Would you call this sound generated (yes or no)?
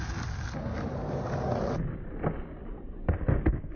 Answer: no